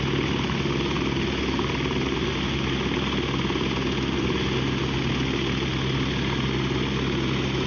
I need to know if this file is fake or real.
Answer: real